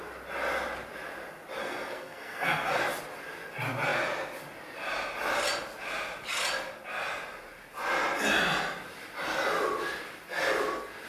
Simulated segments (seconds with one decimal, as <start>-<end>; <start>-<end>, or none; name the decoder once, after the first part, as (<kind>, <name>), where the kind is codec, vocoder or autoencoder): 1.6-2.8 (codec, SNAC)